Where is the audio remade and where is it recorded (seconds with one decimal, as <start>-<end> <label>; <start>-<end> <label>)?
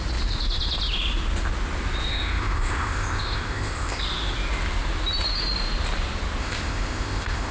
0.0-2.1 recorded; 2.1-4.0 remade; 4.0-6.4 recorded; 6.4-7.5 remade